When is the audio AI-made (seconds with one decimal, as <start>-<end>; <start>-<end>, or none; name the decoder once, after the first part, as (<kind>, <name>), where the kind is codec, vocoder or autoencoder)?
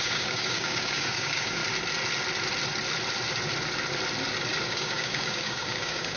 0.0-1.6 (codec, DAC); 4.7-6.2